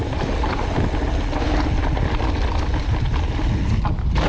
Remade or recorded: recorded